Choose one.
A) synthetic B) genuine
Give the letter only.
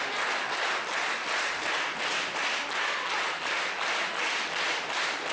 B